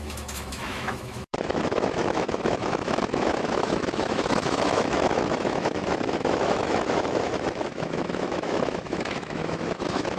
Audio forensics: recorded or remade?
remade